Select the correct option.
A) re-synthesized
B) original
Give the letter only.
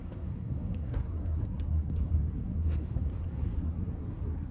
A